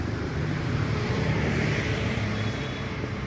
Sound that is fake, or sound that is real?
fake